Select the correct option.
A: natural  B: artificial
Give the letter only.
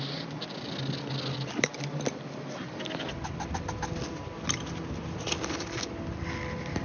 A